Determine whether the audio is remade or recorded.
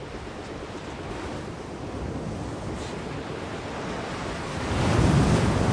recorded